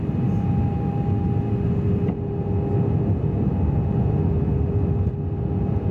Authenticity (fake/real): real